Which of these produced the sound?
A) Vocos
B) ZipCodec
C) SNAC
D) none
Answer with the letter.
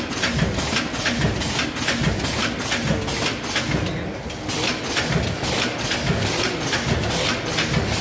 D